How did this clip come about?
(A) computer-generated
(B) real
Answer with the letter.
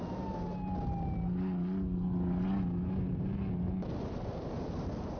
B